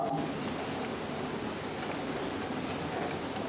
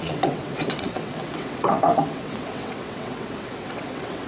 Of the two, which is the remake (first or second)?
second